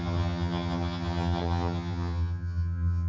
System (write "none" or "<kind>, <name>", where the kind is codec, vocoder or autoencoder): vocoder, HiFi-GAN